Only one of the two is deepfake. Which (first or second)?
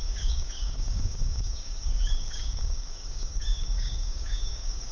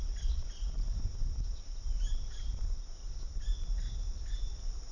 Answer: first